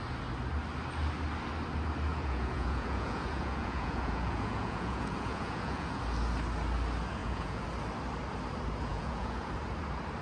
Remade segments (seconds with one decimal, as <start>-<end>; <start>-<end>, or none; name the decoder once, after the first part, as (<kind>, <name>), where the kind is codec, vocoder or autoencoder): 2.1-6.0 (vocoder, Vocos); 7.2-7.7; 8.9-9.5